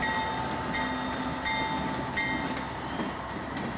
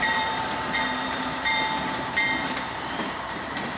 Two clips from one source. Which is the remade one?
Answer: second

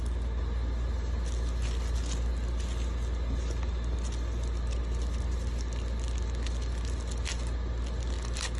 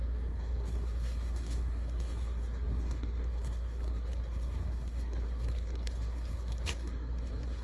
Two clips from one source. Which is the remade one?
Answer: second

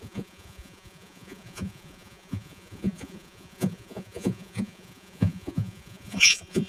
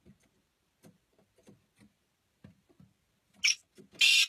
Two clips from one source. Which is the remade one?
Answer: first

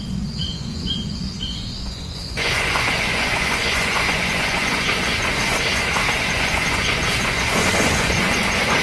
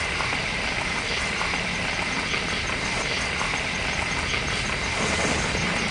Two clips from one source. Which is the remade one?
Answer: first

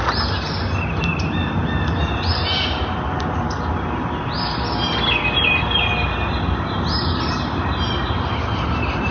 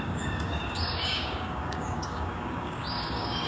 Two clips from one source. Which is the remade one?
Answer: second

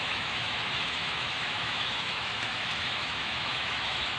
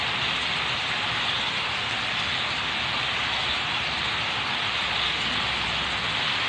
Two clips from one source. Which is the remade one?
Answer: first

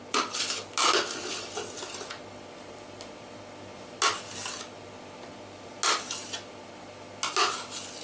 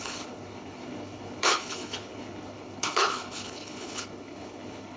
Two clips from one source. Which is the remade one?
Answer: second